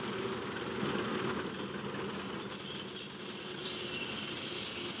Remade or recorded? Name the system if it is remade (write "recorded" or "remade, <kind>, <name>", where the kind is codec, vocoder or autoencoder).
recorded